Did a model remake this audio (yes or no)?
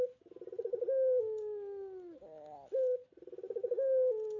no